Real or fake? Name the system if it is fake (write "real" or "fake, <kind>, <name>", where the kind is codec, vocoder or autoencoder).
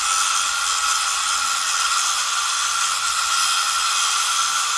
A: real